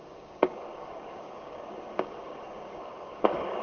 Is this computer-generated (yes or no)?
yes